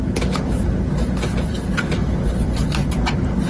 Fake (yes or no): no